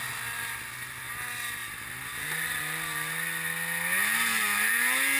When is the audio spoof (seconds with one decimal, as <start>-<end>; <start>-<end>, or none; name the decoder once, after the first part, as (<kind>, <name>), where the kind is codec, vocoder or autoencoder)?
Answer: none